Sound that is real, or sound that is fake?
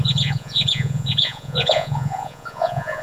fake